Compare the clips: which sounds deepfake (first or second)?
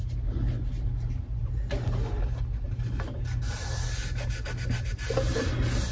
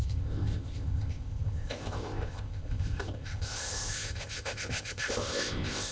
second